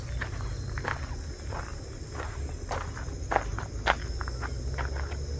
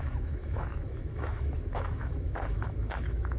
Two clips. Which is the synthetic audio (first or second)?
second